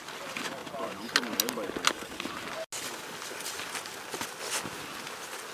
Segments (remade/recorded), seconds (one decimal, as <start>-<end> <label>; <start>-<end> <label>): 0.0-5.5 recorded